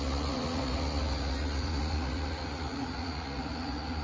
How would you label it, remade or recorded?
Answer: remade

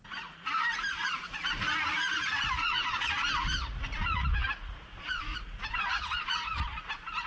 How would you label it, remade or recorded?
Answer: remade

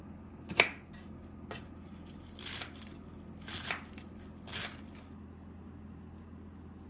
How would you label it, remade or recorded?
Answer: recorded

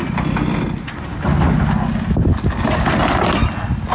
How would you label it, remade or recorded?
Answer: recorded